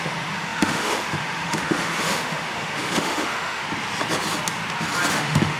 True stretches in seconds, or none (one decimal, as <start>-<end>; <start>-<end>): 3.6-5.1